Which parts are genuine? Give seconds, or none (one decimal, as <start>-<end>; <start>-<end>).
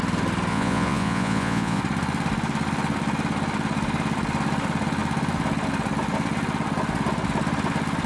0.0-0.5; 1.8-8.1